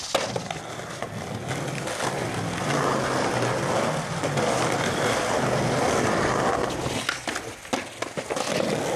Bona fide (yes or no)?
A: yes